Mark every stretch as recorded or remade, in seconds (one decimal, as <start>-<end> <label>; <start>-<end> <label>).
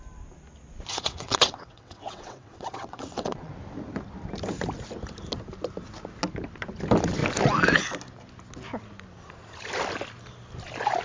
0.0-0.9 recorded; 0.9-3.5 remade; 3.5-11.0 recorded